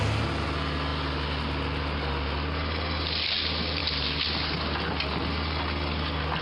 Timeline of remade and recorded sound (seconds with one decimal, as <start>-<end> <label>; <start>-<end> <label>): 0.0-6.4 recorded